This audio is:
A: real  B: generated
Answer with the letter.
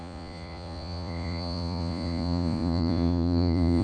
B